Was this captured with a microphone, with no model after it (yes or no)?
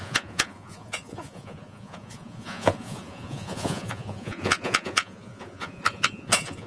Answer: no